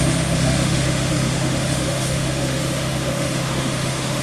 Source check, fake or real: fake